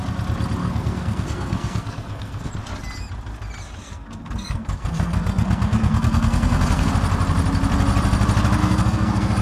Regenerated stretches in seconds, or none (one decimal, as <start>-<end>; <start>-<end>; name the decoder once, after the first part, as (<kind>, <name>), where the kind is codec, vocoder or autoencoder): 0.6-2.5 (codec, SNAC); 3.8-6.9; 8.6-9.4